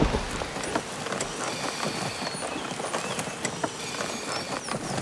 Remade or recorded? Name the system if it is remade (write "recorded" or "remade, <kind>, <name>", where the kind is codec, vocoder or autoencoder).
recorded